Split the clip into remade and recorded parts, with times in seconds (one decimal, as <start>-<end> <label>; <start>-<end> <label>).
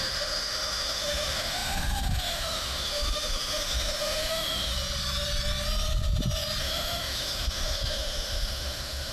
0.0-4.7 remade; 4.7-6.6 recorded; 6.6-9.1 remade